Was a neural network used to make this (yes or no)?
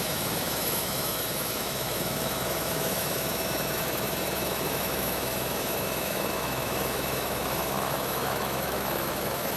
yes